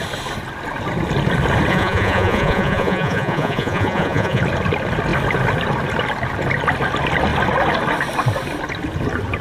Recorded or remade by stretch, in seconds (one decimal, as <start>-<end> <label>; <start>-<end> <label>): 0.0-1.7 recorded; 1.7-4.4 remade; 4.4-9.4 recorded